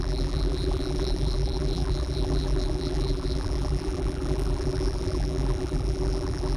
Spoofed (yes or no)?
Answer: yes